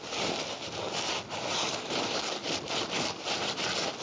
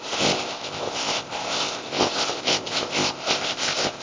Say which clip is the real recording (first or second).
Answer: first